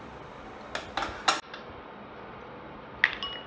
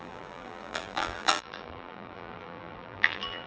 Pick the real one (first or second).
first